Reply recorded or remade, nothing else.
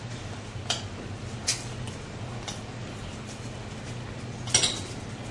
recorded